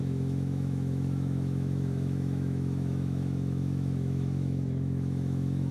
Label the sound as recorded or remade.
remade